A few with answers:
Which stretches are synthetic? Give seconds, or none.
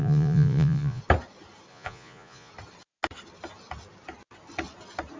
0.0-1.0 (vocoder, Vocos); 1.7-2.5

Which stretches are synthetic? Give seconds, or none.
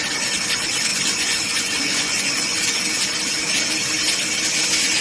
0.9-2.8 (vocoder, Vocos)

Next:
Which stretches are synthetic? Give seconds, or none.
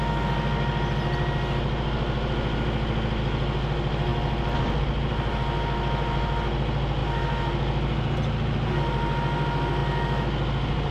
none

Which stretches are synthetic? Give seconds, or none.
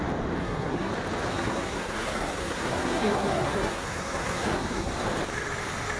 0.4-0.9 (codec, SNAC); 1.3-4.9